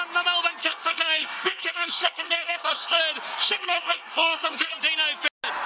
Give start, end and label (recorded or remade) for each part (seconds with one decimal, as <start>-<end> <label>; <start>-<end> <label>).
0.0-0.6 recorded; 0.6-3.0 remade; 3.0-3.4 recorded; 3.4-4.7 remade; 4.7-5.7 recorded